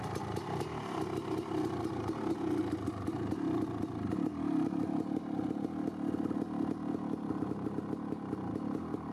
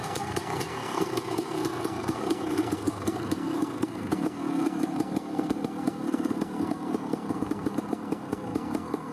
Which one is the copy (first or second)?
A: second